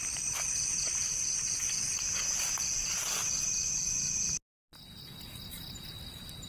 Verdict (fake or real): real